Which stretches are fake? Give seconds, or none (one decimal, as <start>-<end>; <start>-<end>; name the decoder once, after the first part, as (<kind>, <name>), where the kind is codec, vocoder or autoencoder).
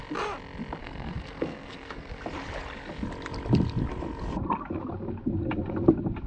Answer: 0.8-2.2 (codec, SNAC)